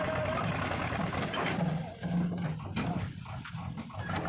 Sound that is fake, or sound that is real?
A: real